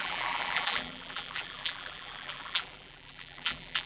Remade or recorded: remade